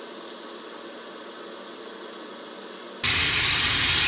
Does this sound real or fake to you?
real